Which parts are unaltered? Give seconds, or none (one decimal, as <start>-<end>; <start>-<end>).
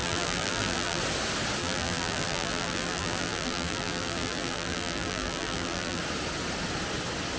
1.0-1.6; 6.0-7.4